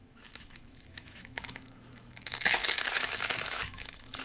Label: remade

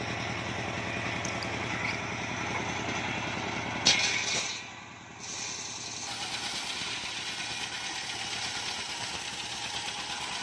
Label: recorded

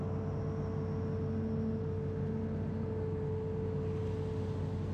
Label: recorded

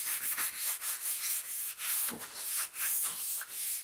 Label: remade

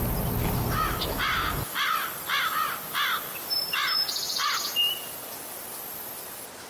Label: recorded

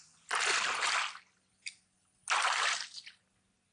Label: recorded